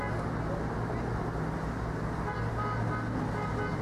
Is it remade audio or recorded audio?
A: recorded